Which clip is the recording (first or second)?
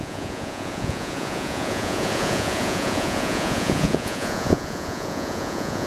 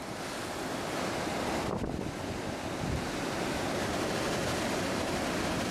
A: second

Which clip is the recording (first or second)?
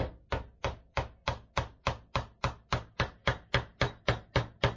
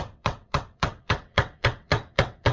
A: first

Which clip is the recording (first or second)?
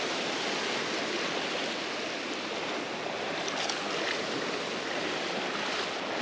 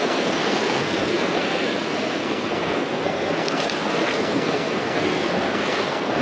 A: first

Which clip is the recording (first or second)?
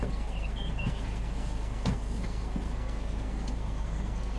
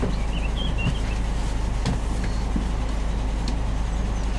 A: second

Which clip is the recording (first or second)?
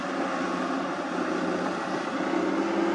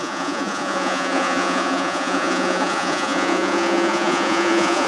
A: first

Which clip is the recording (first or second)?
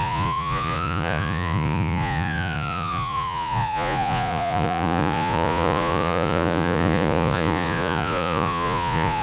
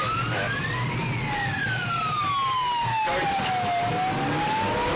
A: second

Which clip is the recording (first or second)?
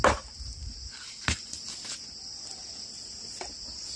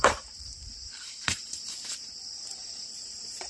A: first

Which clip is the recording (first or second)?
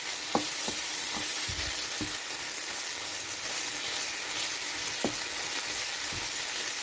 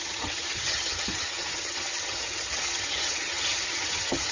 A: first